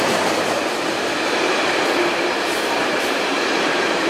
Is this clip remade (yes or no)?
yes